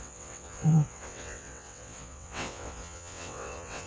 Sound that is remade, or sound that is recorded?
remade